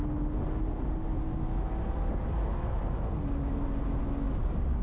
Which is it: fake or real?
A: real